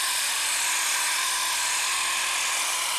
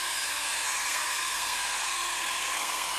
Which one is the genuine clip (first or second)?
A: first